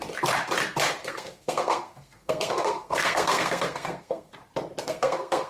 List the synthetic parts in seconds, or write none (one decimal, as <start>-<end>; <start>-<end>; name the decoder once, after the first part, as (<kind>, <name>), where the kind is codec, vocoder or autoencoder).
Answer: 1.0-4.3 (codec, SNAC); 4.8-5.5